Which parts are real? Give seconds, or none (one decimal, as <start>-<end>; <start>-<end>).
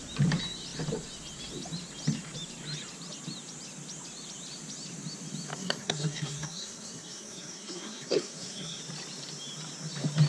0.0-5.6; 8.8-10.3